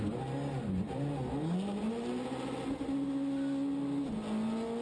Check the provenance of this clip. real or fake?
real